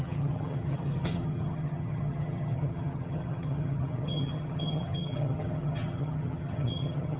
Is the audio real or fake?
fake